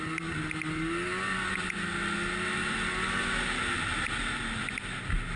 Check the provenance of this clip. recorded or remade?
recorded